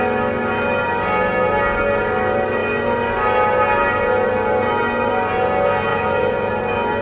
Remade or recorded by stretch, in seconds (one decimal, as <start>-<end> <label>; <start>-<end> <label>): 0.0-5.9 recorded; 5.9-6.5 remade; 6.5-7.0 recorded